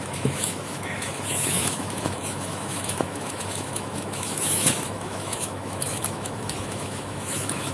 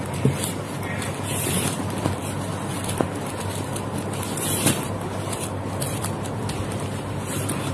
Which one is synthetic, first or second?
first